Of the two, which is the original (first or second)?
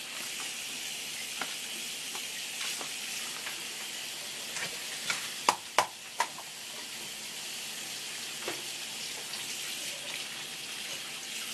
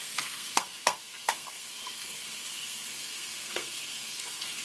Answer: first